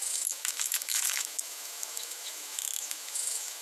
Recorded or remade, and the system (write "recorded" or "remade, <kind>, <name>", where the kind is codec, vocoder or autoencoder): remade, autoencoder, DAC-VAE